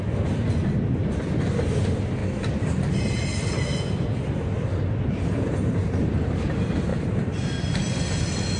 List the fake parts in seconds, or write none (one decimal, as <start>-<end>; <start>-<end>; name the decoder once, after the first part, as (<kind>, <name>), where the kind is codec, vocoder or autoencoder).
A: 6.9-7.8 (vocoder, BigVGAN v2)